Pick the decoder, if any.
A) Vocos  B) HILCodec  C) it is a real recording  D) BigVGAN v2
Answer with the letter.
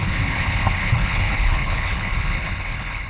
B